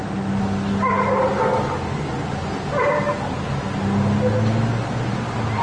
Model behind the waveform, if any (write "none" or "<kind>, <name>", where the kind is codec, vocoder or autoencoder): none